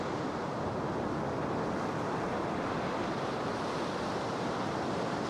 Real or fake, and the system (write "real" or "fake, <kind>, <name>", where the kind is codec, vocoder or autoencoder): real